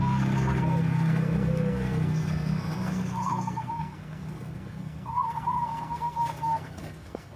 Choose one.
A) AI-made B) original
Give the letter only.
A